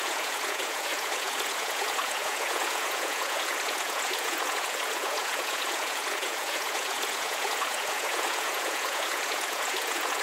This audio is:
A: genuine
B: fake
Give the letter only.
B